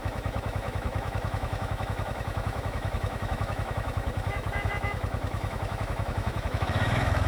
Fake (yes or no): yes